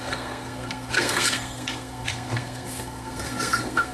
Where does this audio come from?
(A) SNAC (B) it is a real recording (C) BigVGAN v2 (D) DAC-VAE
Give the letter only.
A